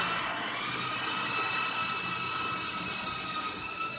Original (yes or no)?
yes